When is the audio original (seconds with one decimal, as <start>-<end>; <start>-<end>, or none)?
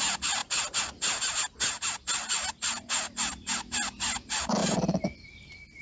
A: 0.0-5.8